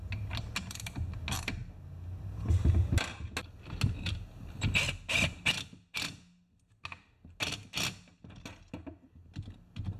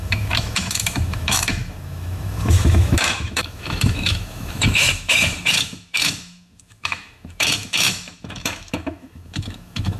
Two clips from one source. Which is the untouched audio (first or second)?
first